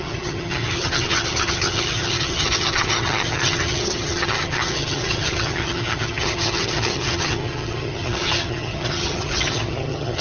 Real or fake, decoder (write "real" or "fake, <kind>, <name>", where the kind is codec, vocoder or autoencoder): fake, vocoder, HiFi-GAN